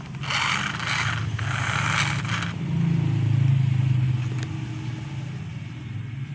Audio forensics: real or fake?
real